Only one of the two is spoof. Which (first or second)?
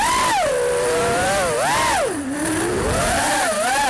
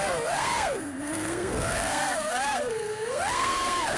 second